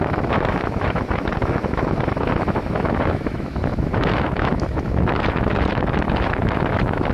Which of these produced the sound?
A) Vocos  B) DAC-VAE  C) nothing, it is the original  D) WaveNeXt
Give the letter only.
B